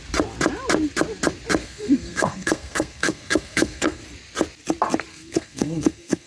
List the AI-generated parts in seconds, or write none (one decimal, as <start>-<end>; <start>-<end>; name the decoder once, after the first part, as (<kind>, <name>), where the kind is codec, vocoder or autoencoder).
1.6-4.0 (codec, SNAC); 5.1-6.3